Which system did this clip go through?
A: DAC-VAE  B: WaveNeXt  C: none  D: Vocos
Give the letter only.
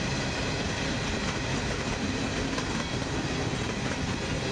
C